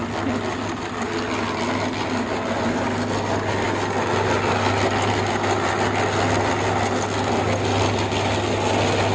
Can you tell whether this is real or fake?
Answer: real